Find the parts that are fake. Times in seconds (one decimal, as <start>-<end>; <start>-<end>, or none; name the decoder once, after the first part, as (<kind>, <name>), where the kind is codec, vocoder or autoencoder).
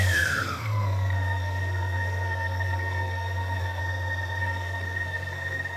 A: 0.0-3.8 (codec, SNAC); 4.4-5.8